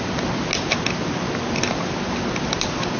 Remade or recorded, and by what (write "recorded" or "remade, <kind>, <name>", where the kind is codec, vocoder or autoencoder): recorded